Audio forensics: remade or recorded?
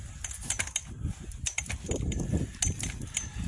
recorded